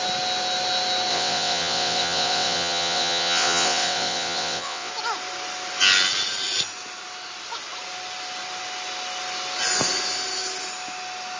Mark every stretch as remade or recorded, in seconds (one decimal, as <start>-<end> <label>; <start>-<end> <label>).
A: 0.0-1.1 recorded; 1.1-4.9 remade; 4.9-11.4 recorded